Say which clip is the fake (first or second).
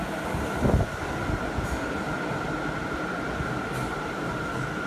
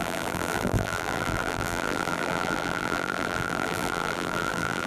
second